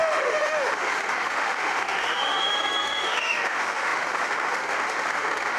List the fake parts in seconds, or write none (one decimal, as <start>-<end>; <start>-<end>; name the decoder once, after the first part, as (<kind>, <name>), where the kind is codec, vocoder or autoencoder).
0.0-5.6 (autoencoder, DAC-VAE)